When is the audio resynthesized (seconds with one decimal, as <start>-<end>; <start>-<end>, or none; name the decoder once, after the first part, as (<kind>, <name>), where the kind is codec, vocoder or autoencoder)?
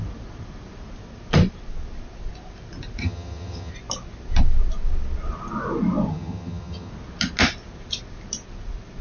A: 3.0-3.7 (vocoder, HiFi-GAN); 6.1-6.9